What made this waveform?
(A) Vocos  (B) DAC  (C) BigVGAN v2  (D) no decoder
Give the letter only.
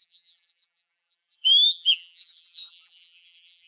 C